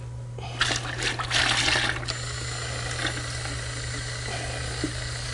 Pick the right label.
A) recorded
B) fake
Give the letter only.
A